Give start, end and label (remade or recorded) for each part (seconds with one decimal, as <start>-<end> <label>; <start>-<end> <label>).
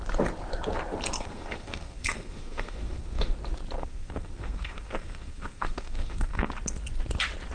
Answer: 0.0-1.2 recorded; 1.2-3.3 remade; 3.3-3.8 recorded; 3.8-6.5 remade; 6.5-7.5 recorded